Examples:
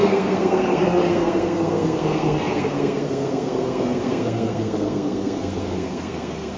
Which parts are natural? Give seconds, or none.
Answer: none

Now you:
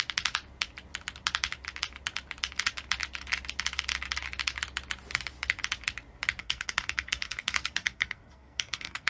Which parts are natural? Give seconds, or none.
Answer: 0.0-6.4

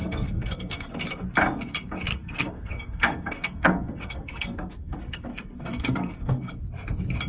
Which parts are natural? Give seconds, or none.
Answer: 0.9-2.1; 6.5-7.3

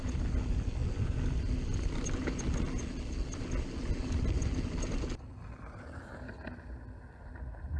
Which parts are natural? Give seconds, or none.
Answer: 0.0-7.8

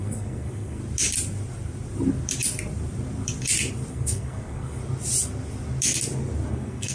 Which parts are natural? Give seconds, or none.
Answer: 0.8-3.9; 4.8-6.5

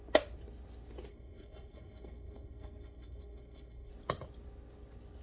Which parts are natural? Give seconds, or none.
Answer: 0.0-1.1; 3.9-5.2